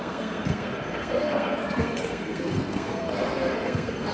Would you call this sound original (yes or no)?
no